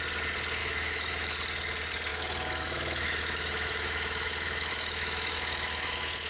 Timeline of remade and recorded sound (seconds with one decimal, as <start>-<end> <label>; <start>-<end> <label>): 0.0-0.6 recorded; 0.6-1.3 remade; 1.3-2.1 recorded; 2.1-6.3 remade